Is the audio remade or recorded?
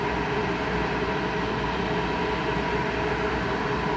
recorded